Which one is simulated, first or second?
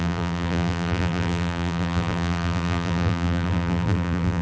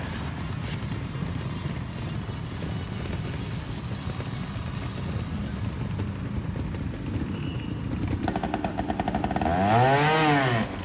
first